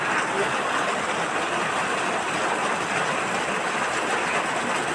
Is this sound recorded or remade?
recorded